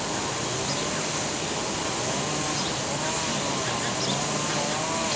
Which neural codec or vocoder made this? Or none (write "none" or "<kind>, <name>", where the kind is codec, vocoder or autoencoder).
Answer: none